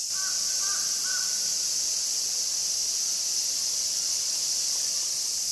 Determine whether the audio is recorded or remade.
remade